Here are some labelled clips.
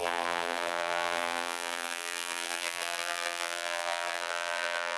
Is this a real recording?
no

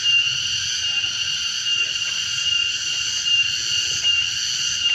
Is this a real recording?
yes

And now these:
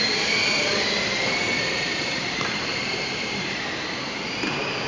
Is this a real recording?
no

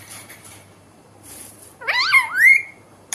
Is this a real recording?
no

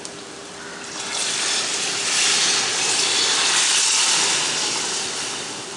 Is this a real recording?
no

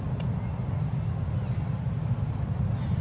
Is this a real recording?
yes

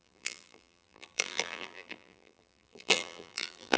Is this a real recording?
no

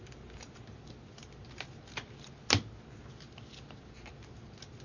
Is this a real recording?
yes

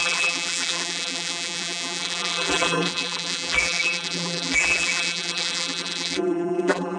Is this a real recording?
no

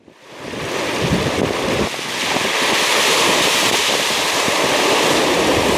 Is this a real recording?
yes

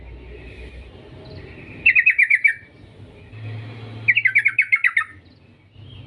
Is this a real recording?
yes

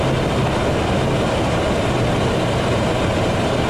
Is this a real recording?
yes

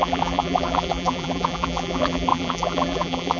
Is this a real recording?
no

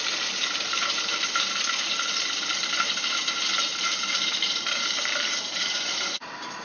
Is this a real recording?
no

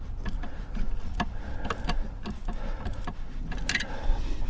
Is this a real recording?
yes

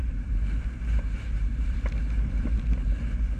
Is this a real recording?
yes